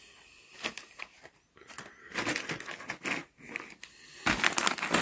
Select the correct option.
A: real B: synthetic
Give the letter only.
A